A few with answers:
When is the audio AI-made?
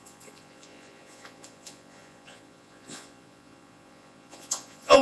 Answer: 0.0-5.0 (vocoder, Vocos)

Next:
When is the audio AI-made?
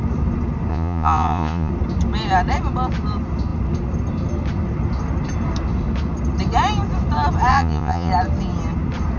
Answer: 0.7-1.7 (vocoder, Vocos); 7.5-8.1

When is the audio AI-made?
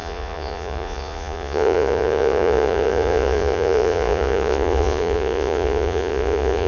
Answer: 0.0-6.7 (vocoder, Vocos)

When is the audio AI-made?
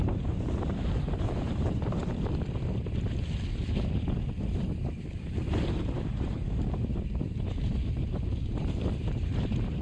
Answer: 0.0-2.0 (vocoder, BigVGAN v2); 4.4-9.8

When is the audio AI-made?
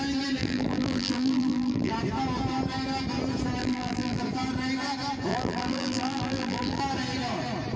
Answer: 0.4-1.9 (vocoder, BigVGAN v2); 3.6-4.2; 5.3-6.8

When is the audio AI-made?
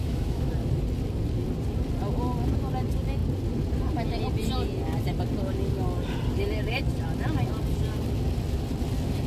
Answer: 0.0-0.5 (autoencoder, DAC-VAE)